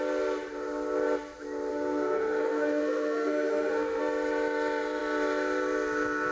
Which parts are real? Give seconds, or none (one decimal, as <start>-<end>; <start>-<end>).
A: 0.0-1.7; 4.0-6.3